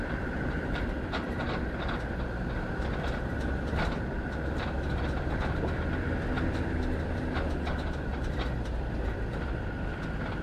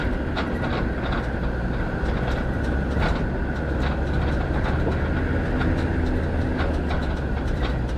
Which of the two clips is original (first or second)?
second